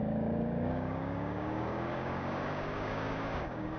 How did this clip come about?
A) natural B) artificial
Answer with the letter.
B